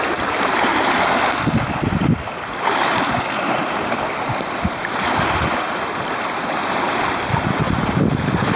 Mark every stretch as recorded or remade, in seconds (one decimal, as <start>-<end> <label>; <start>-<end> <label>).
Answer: 0.0-0.7 remade; 0.7-2.0 recorded; 2.0-8.6 remade